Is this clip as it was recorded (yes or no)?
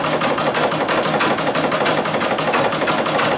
yes